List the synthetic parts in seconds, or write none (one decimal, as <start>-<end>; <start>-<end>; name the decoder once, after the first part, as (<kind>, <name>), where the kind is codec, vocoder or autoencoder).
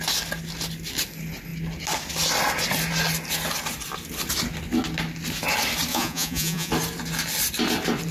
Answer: 5.9-6.7 (vocoder, Vocos)